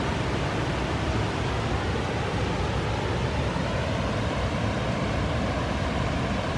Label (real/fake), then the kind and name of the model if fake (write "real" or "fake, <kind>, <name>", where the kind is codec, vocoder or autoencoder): real